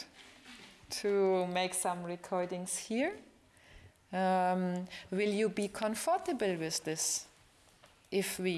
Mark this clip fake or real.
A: real